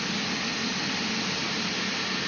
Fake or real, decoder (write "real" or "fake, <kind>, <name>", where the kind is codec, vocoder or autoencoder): real